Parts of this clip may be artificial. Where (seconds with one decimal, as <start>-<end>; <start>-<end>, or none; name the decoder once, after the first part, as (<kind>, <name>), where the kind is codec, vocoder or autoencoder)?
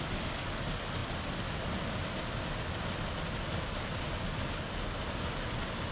none